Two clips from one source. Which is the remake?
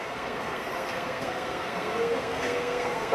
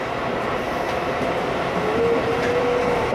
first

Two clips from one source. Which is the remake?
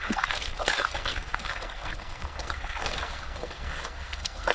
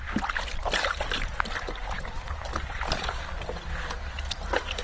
first